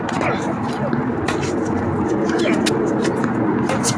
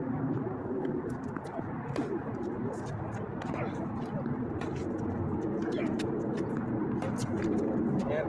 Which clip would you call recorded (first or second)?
first